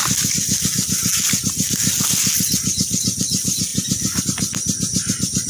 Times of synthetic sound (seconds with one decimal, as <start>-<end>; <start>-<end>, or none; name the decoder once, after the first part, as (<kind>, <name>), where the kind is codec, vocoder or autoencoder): none